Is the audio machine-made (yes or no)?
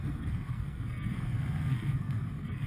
yes